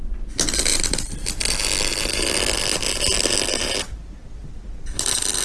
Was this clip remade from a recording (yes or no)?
no